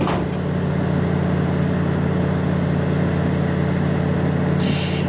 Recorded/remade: recorded